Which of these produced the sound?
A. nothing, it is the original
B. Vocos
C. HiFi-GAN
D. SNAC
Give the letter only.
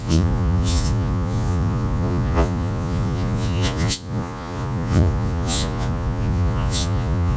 B